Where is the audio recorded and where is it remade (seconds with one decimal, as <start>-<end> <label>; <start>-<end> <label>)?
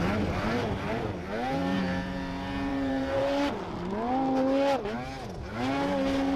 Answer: 0.0-0.4 recorded; 0.4-1.0 remade; 1.0-2.7 recorded; 2.7-3.5 remade; 3.5-6.4 recorded